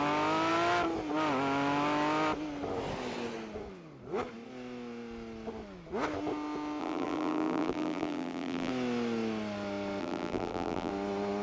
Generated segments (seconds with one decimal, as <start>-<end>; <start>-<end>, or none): 6.8-8.7; 10.0-10.9